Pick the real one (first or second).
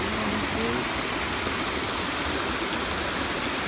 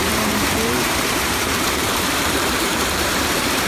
first